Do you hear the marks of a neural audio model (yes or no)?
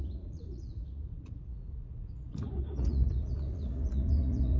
yes